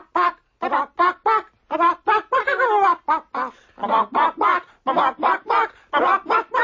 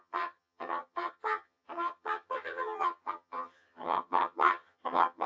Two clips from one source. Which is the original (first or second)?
first